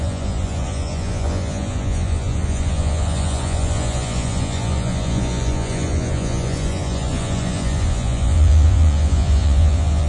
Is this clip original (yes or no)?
no